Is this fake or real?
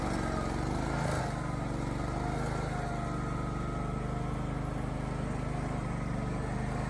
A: real